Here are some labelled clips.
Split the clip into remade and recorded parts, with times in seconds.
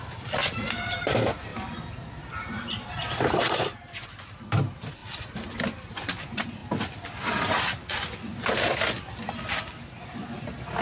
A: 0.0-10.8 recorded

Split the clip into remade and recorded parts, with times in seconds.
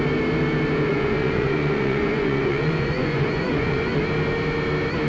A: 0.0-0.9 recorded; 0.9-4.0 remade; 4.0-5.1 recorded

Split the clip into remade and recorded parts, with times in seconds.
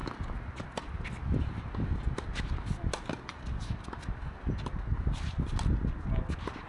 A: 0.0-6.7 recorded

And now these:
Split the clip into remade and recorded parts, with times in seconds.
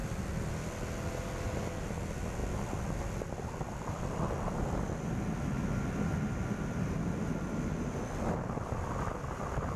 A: 0.0-9.8 recorded